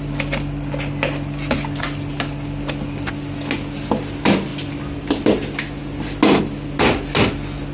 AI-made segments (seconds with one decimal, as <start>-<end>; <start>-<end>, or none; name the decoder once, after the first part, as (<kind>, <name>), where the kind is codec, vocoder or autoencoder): none